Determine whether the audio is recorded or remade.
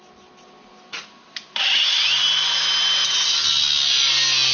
recorded